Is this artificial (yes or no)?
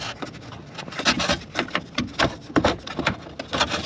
no